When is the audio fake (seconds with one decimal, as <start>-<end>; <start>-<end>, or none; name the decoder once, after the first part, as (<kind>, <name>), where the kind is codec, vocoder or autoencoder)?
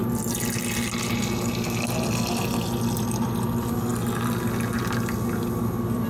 none